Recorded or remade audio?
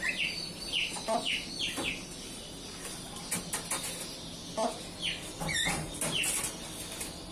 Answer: recorded